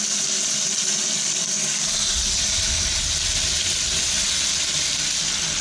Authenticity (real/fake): real